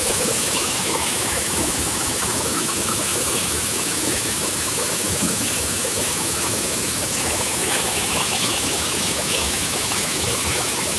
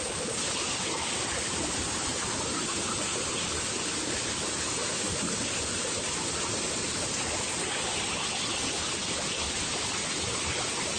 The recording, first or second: second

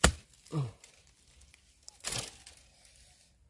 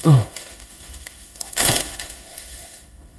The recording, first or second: first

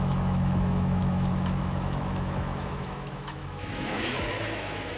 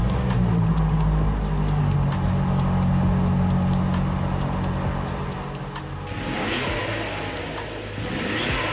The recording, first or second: second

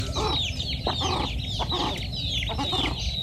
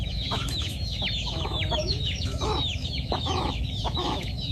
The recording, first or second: first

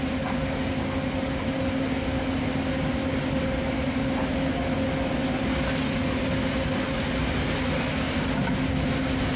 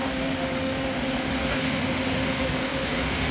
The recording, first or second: first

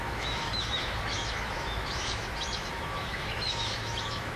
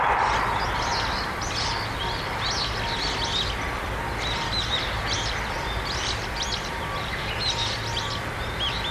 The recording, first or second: second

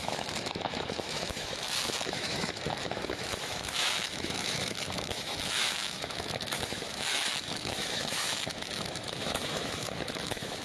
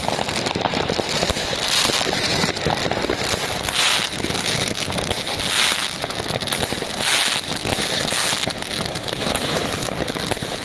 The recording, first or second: second